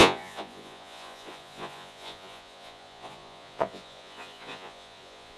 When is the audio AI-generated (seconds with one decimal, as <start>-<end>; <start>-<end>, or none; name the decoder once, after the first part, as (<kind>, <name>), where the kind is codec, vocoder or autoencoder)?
0.0-5.4 (vocoder, Vocos)

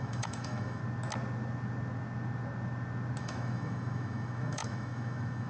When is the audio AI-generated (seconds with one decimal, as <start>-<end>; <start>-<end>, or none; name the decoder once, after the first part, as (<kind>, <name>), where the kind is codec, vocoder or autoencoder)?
0.0-0.8 (autoencoder, DAC-VAE); 3.2-5.5

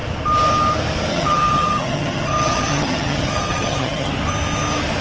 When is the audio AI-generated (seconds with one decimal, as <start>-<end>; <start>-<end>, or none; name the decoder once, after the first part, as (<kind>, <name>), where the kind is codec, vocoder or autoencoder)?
1.1-4.1 (vocoder, HiFi-GAN)

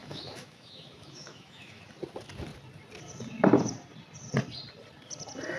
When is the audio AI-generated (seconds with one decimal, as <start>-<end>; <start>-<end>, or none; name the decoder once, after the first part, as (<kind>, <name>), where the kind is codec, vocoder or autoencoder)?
0.0-1.8 (autoencoder, DAC-VAE)